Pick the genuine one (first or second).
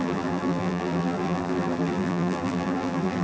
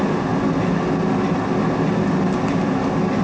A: second